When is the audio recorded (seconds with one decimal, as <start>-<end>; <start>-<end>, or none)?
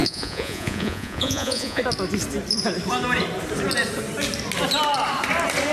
1.8-5.7